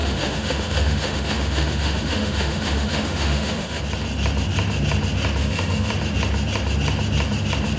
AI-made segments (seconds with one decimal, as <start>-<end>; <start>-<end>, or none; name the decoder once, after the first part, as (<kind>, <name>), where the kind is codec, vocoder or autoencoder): 0.0-3.8 (autoencoder, DAC-VAE); 5.4-5.9